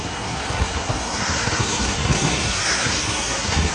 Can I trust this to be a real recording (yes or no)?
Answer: no